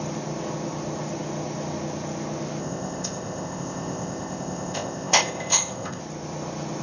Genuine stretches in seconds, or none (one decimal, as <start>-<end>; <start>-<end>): 0.0-2.6; 6.0-6.8